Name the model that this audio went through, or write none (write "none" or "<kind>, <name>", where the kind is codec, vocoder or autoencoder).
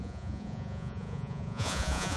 vocoder, Vocos